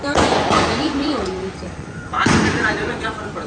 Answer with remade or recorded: remade